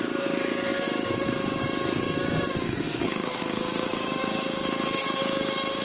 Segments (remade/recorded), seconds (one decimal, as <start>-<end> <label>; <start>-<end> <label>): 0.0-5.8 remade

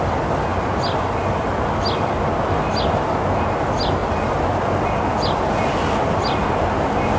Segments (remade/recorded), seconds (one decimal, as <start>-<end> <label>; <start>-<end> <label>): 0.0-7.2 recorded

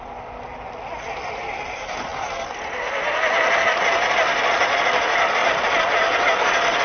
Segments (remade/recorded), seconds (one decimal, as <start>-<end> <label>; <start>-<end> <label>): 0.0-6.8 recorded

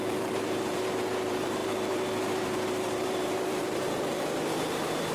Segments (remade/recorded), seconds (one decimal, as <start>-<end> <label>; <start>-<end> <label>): 0.0-5.1 remade

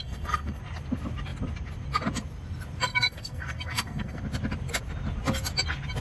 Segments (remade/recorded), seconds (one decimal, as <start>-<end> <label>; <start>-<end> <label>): 0.0-0.6 remade; 0.6-2.9 recorded; 2.9-4.2 remade; 4.2-6.0 recorded

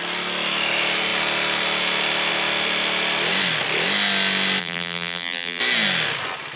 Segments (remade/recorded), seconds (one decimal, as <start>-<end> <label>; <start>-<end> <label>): 0.0-4.6 recorded; 4.6-5.6 remade; 5.6-6.6 recorded